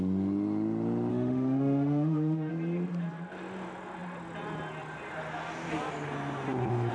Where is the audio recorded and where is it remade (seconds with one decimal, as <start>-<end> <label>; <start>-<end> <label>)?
0.0-1.1 recorded; 1.1-2.5 remade; 2.5-6.9 recorded

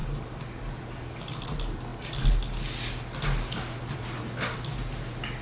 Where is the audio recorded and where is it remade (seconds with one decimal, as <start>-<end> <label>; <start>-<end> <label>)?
0.0-5.4 recorded

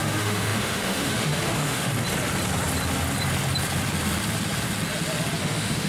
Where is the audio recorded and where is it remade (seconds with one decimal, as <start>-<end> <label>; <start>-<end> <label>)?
0.0-1.9 remade; 1.9-5.4 recorded; 5.4-5.9 remade

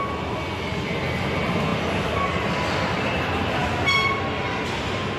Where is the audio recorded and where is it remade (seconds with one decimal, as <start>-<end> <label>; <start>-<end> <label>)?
0.0-5.2 recorded

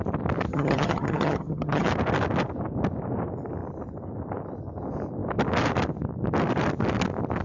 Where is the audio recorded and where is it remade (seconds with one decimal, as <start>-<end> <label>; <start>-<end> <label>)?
0.0-0.5 recorded; 0.5-1.9 remade; 1.9-7.4 recorded